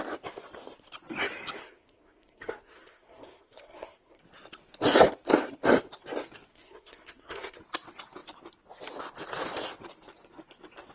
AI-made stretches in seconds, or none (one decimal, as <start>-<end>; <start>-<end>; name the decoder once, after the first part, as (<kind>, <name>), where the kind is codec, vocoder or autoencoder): 1.6-4.2 (codec, SNAC); 6.5-7.6